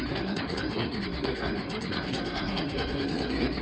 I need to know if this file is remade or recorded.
remade